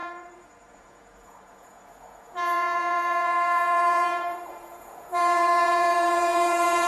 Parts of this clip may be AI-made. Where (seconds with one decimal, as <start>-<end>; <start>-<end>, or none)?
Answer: 0.0-6.9